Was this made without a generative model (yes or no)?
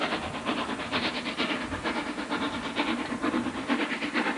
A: yes